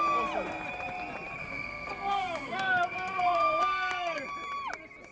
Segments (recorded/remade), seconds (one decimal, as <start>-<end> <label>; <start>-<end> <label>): 0.0-1.4 recorded; 1.4-4.2 remade; 4.2-5.1 recorded